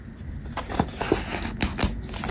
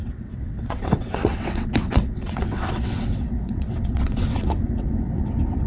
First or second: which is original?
first